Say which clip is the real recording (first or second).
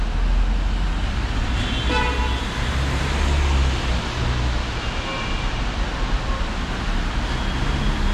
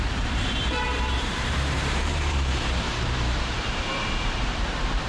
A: first